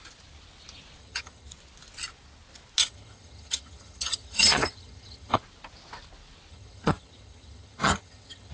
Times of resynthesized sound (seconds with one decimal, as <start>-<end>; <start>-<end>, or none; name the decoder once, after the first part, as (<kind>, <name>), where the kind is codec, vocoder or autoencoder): 1.0-1.5 (vocoder, HiFi-GAN); 2.8-5.4; 6.5-8.5